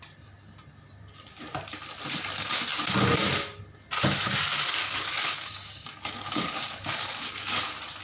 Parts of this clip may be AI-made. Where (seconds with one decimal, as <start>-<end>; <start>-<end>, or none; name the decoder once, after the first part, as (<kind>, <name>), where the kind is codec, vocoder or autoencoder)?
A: 4.8-7.6 (codec, DAC)